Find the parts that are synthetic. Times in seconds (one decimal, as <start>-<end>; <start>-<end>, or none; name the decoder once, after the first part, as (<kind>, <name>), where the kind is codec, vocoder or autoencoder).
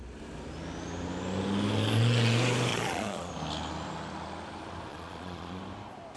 2.7-3.3 (vocoder, Vocos); 4.9-5.6